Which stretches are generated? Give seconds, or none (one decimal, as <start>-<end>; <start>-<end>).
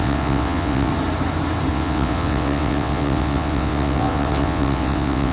0.0-0.9; 1.7-5.3